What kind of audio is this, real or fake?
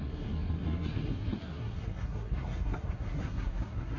fake